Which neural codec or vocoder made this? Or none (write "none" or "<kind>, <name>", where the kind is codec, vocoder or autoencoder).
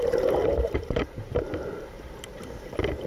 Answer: vocoder, BigVGAN v2